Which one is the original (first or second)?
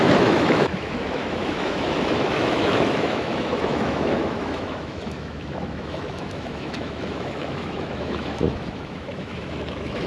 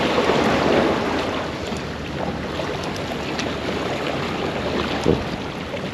second